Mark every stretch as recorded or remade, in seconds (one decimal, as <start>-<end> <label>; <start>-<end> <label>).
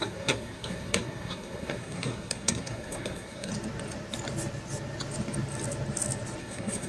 0.0-3.5 remade; 3.5-6.4 recorded; 6.4-6.9 remade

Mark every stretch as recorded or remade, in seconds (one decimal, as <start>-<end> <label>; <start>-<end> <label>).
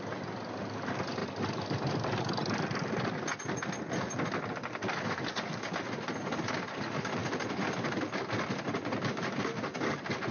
0.0-10.3 recorded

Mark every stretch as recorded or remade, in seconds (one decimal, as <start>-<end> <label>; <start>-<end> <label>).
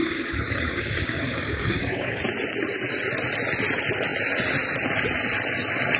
0.0-2.2 remade; 2.2-6.0 recorded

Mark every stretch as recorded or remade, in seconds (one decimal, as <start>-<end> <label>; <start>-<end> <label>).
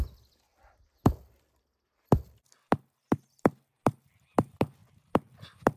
0.0-5.8 recorded